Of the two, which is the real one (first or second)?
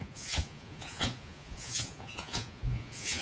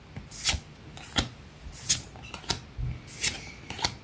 second